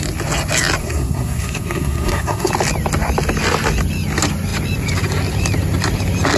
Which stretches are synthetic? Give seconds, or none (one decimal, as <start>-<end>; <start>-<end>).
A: 0.8-2.5